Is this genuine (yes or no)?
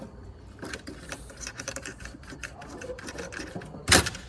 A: yes